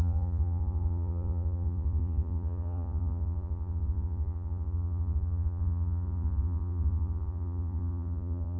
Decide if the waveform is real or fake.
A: fake